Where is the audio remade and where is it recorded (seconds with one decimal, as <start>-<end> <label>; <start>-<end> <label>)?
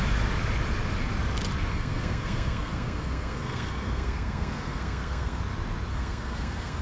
0.0-1.7 recorded; 1.7-5.4 remade; 5.4-5.9 recorded; 5.9-6.8 remade